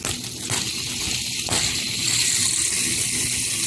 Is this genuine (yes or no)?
yes